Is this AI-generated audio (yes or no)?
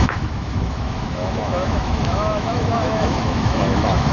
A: yes